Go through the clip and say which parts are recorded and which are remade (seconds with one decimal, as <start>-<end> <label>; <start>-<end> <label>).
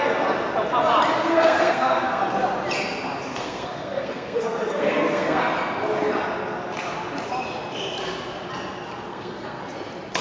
0.0-1.2 recorded; 1.2-2.2 remade; 2.2-3.3 recorded; 3.3-5.4 remade; 5.4-9.1 recorded; 9.1-9.6 remade; 9.6-10.2 recorded